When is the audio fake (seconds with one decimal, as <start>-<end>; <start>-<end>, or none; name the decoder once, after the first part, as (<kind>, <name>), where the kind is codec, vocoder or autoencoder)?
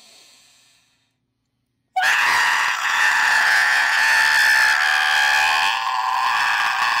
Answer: 0.0-4.2 (vocoder, Vocos)